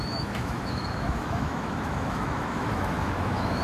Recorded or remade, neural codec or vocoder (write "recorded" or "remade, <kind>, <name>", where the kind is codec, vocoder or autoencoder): remade, autoencoder, DAC-VAE